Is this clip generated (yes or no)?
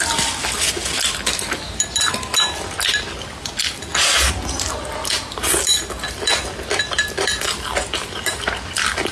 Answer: no